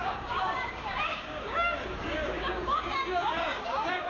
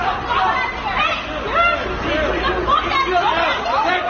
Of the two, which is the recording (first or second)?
second